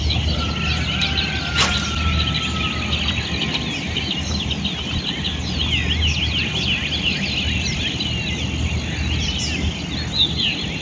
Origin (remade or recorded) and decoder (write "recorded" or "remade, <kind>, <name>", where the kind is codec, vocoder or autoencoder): recorded